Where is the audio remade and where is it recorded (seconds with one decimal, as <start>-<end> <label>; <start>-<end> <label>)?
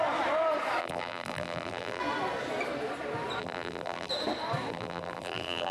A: 0.0-0.8 recorded; 0.8-2.0 remade; 2.0-3.4 recorded; 3.4-4.1 remade; 4.1-4.7 recorded; 4.7-5.7 remade